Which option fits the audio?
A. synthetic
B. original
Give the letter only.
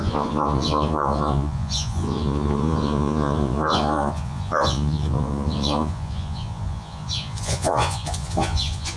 A